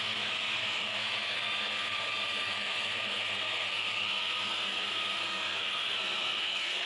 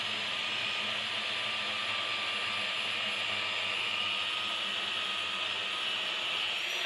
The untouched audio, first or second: second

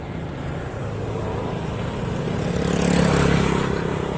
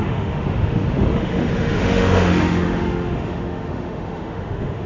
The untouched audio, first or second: first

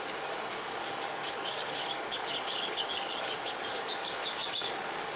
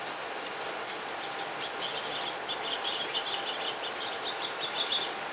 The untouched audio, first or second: second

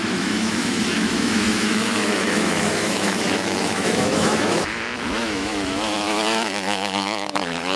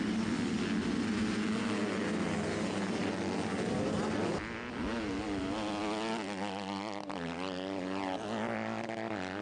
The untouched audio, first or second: second